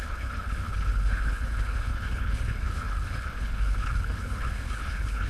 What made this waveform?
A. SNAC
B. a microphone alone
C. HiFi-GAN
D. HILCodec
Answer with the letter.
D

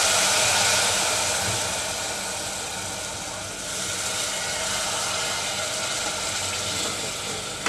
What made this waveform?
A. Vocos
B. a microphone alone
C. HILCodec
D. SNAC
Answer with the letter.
B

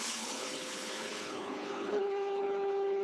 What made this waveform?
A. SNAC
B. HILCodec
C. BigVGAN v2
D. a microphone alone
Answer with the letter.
B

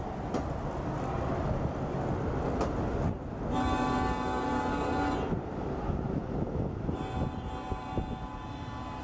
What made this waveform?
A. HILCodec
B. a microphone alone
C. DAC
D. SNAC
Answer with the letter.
B